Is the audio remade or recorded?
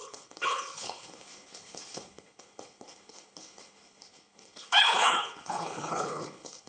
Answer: remade